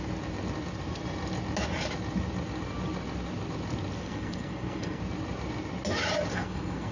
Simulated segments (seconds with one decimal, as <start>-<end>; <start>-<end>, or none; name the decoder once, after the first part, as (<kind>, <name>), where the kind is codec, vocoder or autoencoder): 4.0-5.0 (codec, SNAC); 6.3-6.9